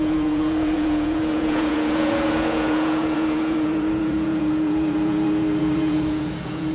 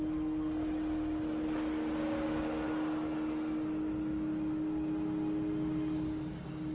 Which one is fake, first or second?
first